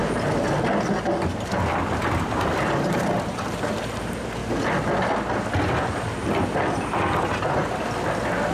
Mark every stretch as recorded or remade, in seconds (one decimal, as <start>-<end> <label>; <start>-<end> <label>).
0.0-2.0 recorded; 2.0-4.4 remade; 4.4-8.5 recorded